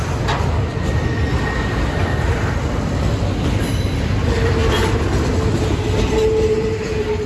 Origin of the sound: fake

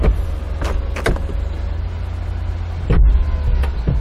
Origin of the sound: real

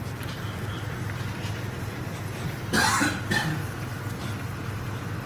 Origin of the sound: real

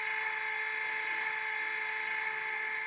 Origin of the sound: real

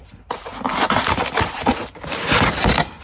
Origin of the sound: real